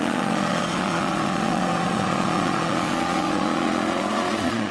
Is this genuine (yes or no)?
no